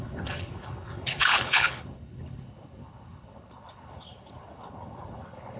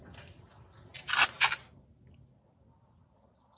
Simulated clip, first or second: first